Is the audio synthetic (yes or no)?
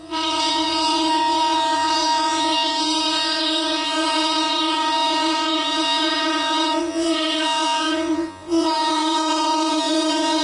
yes